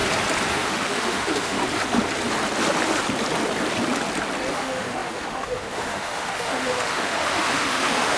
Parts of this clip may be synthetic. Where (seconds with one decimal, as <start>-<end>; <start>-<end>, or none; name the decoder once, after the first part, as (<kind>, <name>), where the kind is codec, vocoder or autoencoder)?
0.5-1.6 (autoencoder, DAC-VAE); 4.5-8.2